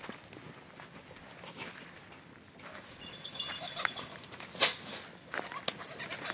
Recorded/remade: recorded